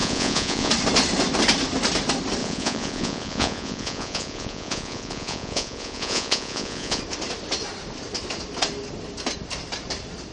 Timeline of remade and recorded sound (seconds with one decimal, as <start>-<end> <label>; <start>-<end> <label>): 0.0-0.7 remade; 0.7-2.4 recorded; 2.4-7.0 remade; 7.0-10.3 recorded